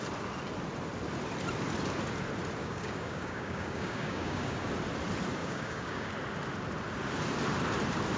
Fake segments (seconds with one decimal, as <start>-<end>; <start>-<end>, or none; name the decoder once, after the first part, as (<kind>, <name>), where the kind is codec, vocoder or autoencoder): 2.6-4.7 (codec, DAC); 5.4-6.1